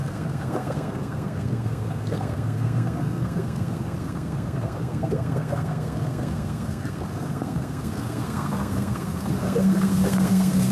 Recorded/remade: remade